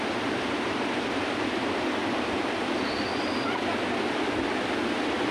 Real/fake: real